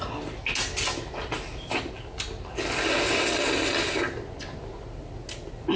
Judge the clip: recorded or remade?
recorded